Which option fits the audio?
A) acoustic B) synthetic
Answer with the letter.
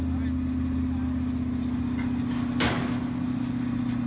A